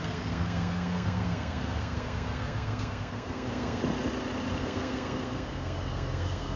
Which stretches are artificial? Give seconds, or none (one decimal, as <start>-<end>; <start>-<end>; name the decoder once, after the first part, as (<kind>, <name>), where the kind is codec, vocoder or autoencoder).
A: 0.0-3.8 (codec, SNAC); 4.6-6.6